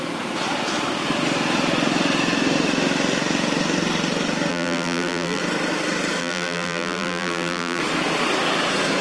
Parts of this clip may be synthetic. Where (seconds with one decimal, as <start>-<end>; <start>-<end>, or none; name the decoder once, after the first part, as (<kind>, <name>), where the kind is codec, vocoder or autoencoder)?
4.5-5.4 (vocoder, BigVGAN v2); 6.2-7.8